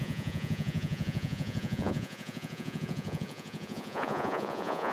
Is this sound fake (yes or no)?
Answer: yes